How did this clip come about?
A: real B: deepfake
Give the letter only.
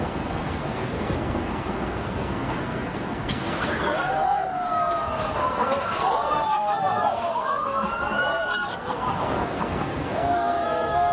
B